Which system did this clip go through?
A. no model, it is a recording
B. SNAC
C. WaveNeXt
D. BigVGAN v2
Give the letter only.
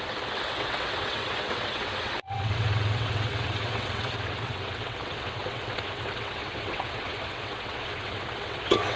C